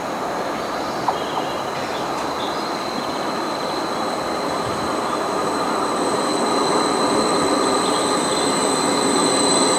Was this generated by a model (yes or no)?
no